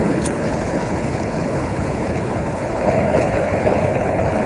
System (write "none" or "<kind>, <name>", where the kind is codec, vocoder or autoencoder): codec, HILCodec